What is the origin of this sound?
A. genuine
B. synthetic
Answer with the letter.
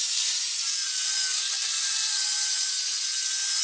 A